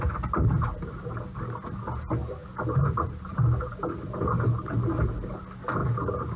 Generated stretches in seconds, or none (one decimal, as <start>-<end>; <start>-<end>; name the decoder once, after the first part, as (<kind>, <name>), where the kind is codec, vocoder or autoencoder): none